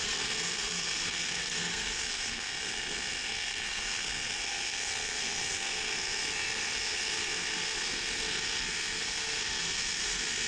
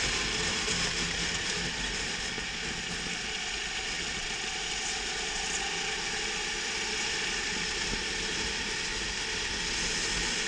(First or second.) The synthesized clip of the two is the first